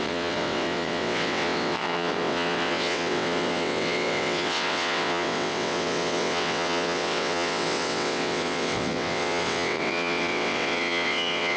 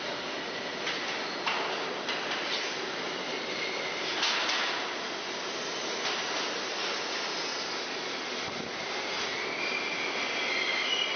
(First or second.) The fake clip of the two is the first